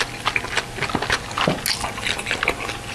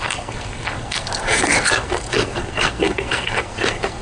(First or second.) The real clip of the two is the first